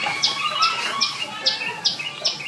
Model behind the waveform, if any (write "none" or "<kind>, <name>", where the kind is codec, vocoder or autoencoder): none